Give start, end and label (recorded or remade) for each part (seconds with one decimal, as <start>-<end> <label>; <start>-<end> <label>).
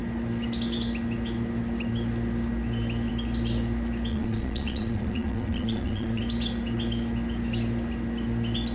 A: 0.0-4.1 recorded; 4.1-6.2 remade; 6.2-8.7 recorded